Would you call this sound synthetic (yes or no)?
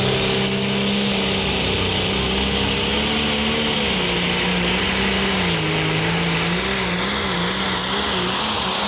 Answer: no